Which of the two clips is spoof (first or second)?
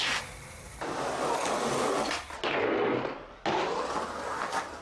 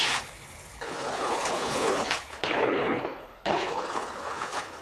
second